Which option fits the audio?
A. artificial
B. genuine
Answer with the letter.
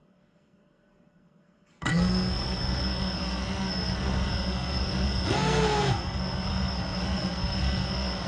A